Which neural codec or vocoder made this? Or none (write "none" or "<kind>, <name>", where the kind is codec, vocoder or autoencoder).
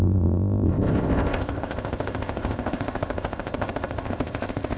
codec, ZipCodec